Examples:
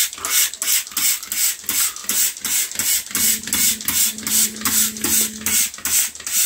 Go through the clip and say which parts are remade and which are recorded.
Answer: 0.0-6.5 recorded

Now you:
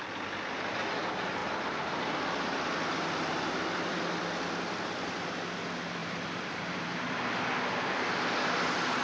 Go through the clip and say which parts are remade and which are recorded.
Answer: 0.0-1.4 recorded; 1.4-2.0 remade; 2.0-6.0 recorded; 6.0-7.5 remade; 7.5-9.0 recorded

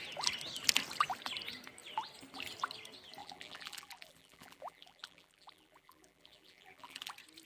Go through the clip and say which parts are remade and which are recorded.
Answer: 0.0-3.2 recorded; 3.2-7.1 remade; 7.1-7.5 recorded

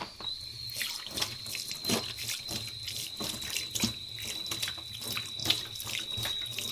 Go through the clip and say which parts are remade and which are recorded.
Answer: 0.0-6.7 recorded

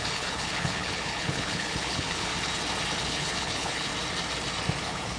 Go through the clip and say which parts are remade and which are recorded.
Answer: 0.0-2.3 remade; 2.3-3.0 recorded; 3.0-3.9 remade; 3.9-4.8 recorded; 4.8-5.2 remade

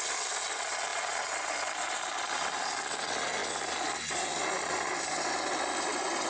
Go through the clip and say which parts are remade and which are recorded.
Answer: 0.0-6.3 recorded

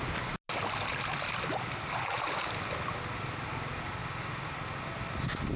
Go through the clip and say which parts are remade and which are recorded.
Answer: 0.0-5.6 recorded